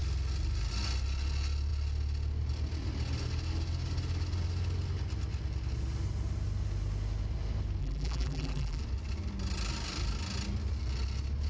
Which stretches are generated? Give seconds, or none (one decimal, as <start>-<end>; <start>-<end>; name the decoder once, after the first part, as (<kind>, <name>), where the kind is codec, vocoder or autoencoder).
7.8-8.8 (vocoder, BigVGAN v2)